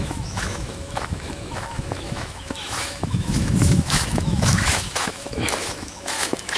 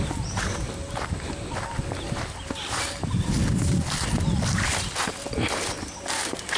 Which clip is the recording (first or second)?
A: second